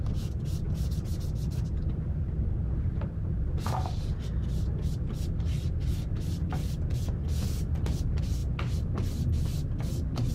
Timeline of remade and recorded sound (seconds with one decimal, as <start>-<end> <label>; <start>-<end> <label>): 0.0-10.3 recorded